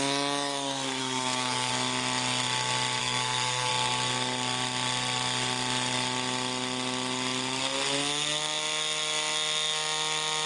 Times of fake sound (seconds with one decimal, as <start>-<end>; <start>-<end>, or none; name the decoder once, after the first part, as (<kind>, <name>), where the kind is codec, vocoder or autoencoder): 1.0-1.7 (codec, SNAC); 3.0-3.7